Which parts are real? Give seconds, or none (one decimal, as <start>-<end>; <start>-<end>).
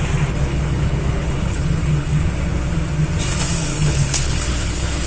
0.0-0.5; 2.3-3.7